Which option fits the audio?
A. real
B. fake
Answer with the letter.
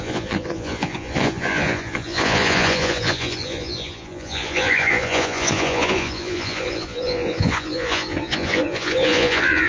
B